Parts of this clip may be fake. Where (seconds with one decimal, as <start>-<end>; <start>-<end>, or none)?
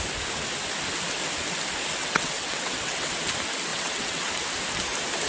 2.0-3.1; 3.7-4.3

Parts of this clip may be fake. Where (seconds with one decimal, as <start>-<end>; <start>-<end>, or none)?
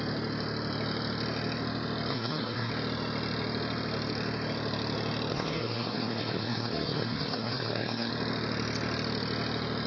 2.1-2.7; 5.3-8.1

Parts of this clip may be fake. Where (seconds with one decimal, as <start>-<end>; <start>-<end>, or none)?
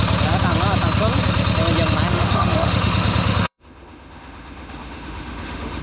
2.1-5.8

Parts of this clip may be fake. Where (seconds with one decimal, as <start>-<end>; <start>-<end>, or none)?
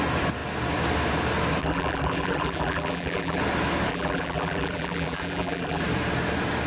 1.6-3.4; 3.9-5.8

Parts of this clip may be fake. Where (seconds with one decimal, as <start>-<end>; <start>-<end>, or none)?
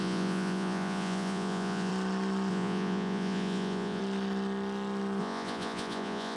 0.0-1.9; 2.5-4.0; 5.2-6.4